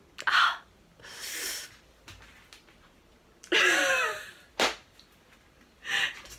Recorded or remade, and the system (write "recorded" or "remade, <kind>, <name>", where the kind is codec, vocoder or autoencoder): recorded